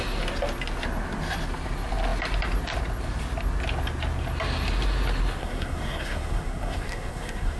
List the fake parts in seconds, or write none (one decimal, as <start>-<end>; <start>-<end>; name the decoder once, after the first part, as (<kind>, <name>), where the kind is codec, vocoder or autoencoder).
5.4-7.6 (codec, SNAC)